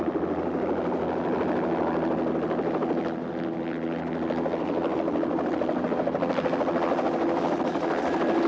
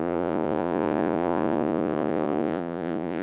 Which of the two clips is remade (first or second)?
second